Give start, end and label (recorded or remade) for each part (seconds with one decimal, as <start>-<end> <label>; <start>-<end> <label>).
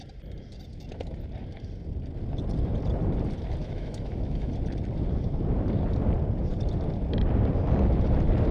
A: 0.0-3.6 recorded; 3.6-4.5 remade; 4.5-8.5 recorded